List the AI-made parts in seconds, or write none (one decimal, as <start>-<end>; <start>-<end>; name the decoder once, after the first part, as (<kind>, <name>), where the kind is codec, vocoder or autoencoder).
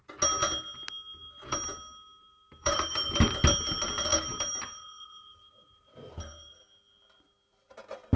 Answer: 1.2-3.4 (vocoder, BigVGAN v2); 4.1-6.6